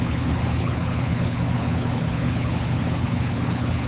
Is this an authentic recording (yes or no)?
no